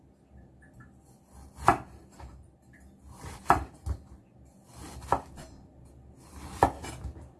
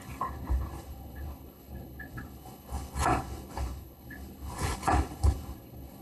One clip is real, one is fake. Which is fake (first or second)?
second